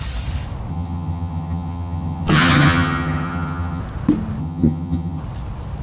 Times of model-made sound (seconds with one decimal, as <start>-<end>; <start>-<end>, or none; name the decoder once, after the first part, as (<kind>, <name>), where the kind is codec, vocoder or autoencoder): 0.7-3.8 (vocoder, HiFi-GAN); 4.4-5.2